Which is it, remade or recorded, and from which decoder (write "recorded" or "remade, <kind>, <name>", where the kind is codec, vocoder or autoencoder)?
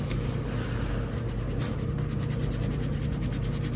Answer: recorded